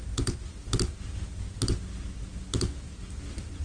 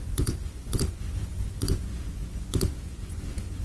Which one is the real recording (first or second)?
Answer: first